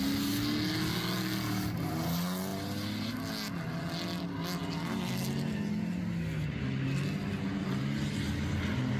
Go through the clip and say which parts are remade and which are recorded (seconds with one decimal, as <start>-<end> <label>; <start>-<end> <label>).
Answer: 0.0-9.0 recorded